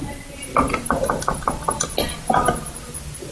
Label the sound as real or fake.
real